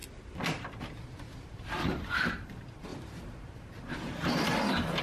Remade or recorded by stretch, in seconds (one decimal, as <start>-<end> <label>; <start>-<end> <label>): 0.0-0.8 recorded; 0.8-5.0 remade